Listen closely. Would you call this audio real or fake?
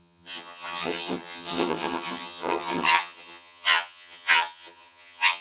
fake